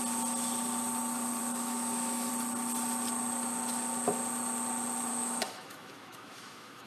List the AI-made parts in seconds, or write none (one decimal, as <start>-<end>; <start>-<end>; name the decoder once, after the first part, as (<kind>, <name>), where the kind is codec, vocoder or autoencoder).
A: 1.4-2.3 (autoencoder, DAC-VAE); 5.1-6.9